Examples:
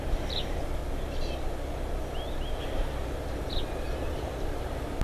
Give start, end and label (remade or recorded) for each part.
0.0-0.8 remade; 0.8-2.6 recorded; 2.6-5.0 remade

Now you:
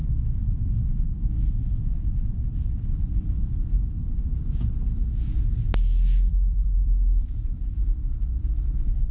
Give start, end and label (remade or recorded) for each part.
0.0-3.7 remade; 3.7-6.3 recorded; 6.3-9.1 remade

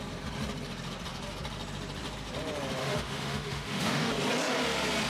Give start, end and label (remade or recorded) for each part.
0.0-2.8 recorded; 2.8-4.1 remade; 4.1-5.1 recorded

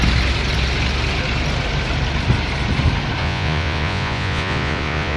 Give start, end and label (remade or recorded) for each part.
0.0-3.2 recorded; 3.2-5.2 remade

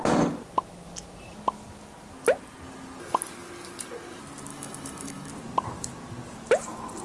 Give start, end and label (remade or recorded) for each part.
0.0-4.5 recorded; 4.5-5.3 remade; 5.3-7.0 recorded

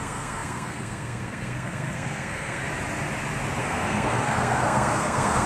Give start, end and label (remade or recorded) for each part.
0.0-2.6 remade; 2.6-3.6 recorded; 3.6-5.5 remade

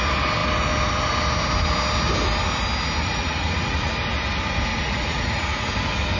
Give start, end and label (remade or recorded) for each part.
0.0-3.0 recorded; 3.0-3.9 remade; 3.9-4.7 recorded; 4.7-5.7 remade; 5.7-6.2 recorded

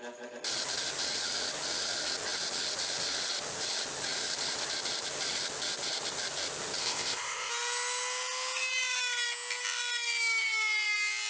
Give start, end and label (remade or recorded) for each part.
0.0-6.8 recorded; 6.8-7.5 remade; 7.5-11.3 recorded